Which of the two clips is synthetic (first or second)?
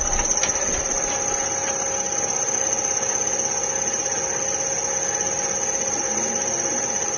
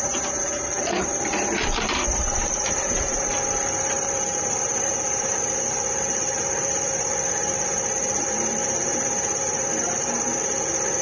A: second